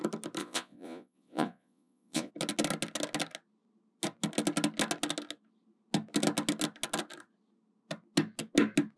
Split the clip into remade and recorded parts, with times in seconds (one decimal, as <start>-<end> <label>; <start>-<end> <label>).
0.0-0.4 recorded; 0.4-2.3 remade; 2.3-9.0 recorded